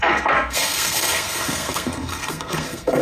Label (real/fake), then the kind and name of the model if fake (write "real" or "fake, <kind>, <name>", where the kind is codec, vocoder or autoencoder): fake, codec, SNAC